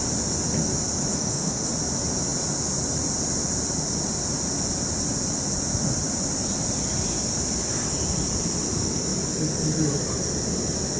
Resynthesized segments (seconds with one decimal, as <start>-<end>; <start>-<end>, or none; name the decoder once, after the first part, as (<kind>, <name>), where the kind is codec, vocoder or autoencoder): 1.1-1.7 (autoencoder, DAC-VAE)